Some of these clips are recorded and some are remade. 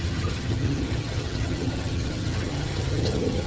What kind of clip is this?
remade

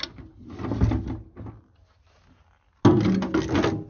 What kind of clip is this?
recorded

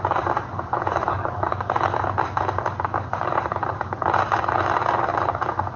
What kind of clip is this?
recorded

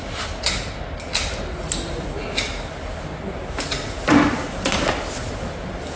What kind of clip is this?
recorded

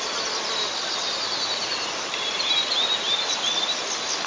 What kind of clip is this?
recorded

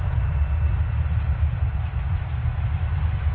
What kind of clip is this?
recorded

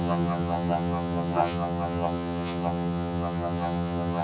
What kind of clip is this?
remade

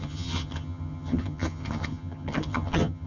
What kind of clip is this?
remade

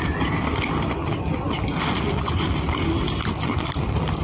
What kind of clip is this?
recorded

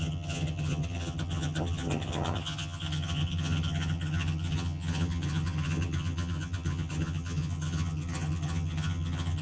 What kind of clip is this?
remade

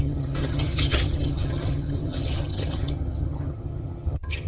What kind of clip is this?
remade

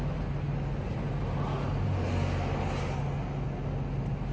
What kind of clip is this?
recorded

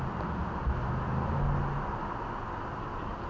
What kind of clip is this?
recorded